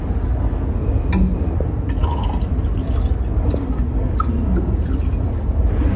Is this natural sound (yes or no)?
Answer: yes